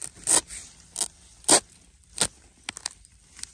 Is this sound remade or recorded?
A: recorded